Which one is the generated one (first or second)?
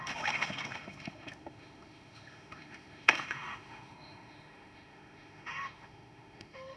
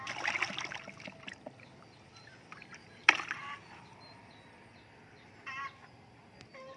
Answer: first